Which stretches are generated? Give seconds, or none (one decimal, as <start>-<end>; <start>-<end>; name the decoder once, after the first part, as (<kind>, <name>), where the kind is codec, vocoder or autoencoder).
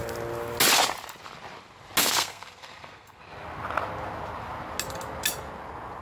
2.0-3.2 (codec, SNAC)